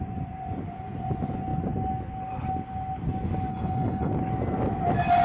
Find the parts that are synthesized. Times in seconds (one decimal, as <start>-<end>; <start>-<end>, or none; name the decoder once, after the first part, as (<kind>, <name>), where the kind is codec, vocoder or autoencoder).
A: 3.5-4.1 (codec, HILCodec)